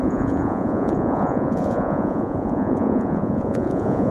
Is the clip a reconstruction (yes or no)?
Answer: yes